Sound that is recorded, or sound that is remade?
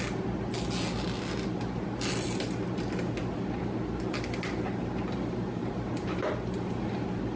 recorded